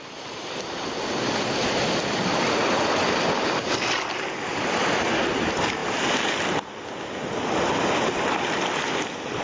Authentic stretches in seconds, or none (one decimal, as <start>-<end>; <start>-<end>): 0.0-9.4